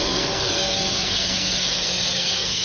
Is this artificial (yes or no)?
yes